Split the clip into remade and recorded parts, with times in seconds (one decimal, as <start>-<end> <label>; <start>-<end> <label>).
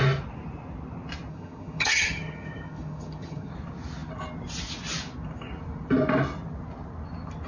0.0-1.3 recorded; 1.3-3.5 remade; 3.5-7.5 recorded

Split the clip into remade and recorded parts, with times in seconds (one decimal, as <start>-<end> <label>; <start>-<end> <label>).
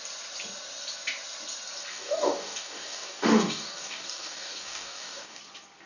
0.0-1.9 recorded; 1.9-5.4 remade; 5.4-5.9 recorded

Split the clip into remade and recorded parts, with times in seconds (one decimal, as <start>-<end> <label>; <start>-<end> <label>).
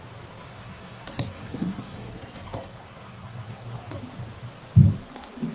0.0-0.5 recorded; 0.5-3.8 remade; 3.8-5.5 recorded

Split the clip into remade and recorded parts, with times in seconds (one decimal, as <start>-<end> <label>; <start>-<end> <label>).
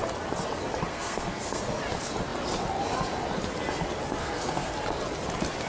0.0-0.9 recorded; 0.9-1.6 remade; 1.6-4.2 recorded; 4.2-4.7 remade; 4.7-5.7 recorded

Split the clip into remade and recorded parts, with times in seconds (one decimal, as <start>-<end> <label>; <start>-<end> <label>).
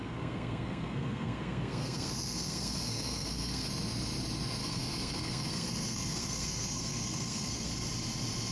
0.0-3.7 remade; 3.7-4.6 recorded; 4.6-7.7 remade; 7.7-8.5 recorded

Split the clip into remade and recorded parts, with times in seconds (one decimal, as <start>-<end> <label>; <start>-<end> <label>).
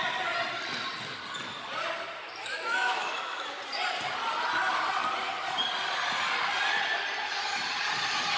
0.0-2.4 recorded; 2.4-3.6 remade; 3.6-8.4 recorded